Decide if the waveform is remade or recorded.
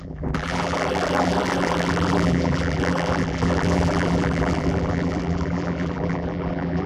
remade